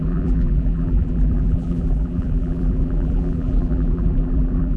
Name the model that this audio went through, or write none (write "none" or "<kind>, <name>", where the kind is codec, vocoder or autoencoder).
vocoder, BigVGAN v2